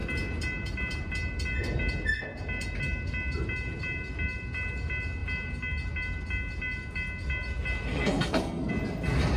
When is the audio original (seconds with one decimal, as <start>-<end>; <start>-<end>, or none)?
0.0-7.9; 8.7-9.4